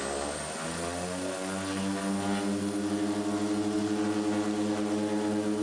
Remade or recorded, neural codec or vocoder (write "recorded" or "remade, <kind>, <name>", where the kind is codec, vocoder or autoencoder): recorded